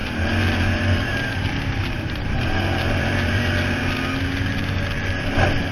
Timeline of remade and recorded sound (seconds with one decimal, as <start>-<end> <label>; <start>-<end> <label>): 0.0-3.4 remade; 3.4-5.7 recorded